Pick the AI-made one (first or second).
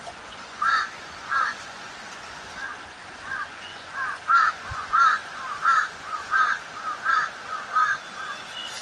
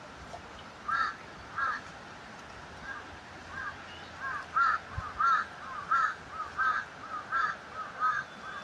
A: first